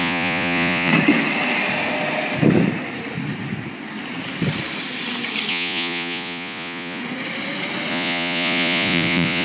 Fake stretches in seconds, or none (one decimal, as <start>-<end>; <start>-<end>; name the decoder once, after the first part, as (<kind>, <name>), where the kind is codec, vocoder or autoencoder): 0.0-0.9 (vocoder, Vocos); 5.5-7.0; 7.9-9.4